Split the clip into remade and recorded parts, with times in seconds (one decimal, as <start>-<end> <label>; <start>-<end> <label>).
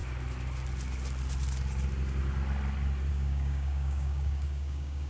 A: 0.0-3.1 recorded; 3.1-5.1 remade